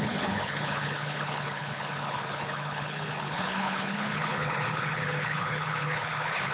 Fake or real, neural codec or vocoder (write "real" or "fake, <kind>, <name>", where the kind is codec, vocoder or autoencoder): fake, codec, HILCodec